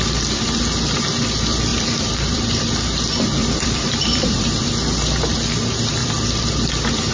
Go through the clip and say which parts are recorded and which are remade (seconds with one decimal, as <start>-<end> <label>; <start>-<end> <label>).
0.0-1.7 recorded; 1.7-2.6 remade; 2.6-3.4 recorded; 3.4-4.7 remade; 4.7-6.0 recorded; 6.0-6.5 remade; 6.5-7.1 recorded